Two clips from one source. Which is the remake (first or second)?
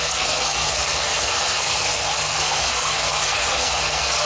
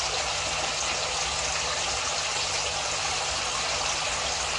first